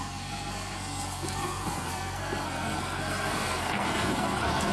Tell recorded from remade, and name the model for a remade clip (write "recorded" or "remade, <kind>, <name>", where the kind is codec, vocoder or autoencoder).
remade, codec, SNAC